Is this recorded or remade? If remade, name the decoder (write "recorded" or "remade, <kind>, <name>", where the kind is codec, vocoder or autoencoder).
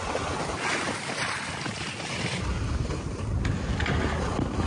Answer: recorded